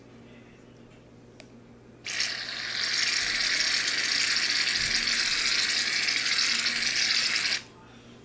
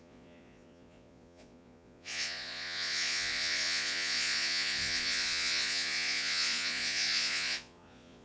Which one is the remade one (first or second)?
second